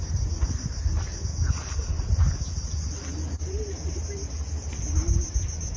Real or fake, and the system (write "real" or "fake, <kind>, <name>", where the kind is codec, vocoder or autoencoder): real